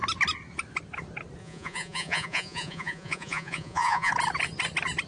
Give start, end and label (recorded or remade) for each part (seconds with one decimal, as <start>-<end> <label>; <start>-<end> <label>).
0.0-1.4 recorded; 1.4-4.1 remade; 4.1-5.1 recorded